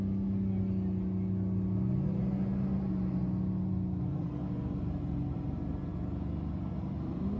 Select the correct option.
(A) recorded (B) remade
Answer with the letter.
A